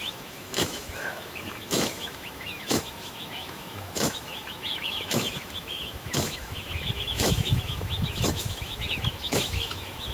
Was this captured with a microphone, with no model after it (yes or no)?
no